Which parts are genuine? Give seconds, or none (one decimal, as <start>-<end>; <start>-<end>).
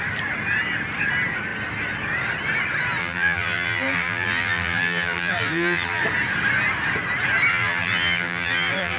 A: 0.0-3.0; 6.0-7.5